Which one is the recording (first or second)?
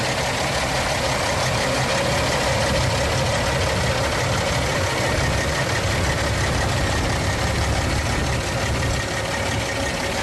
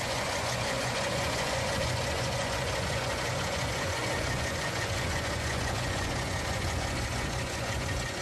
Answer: first